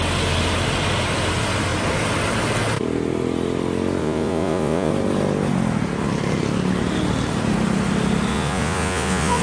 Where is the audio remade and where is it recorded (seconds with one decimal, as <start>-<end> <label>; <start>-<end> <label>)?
0.0-4.0 recorded; 4.0-4.9 remade; 4.9-8.3 recorded; 8.3-9.4 remade